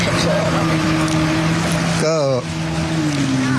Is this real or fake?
real